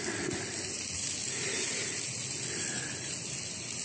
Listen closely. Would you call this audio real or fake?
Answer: real